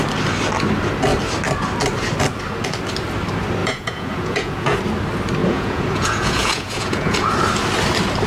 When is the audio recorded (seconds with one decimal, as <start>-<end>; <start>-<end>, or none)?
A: 0.0-3.6; 4.8-5.4; 7.3-8.3